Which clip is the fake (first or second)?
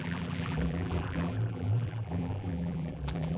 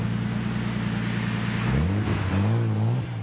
first